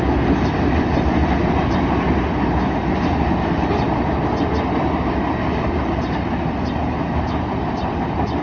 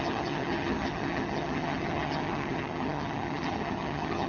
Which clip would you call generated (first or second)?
second